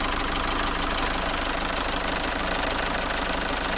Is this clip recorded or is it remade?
recorded